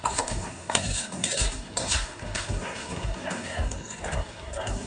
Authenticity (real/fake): fake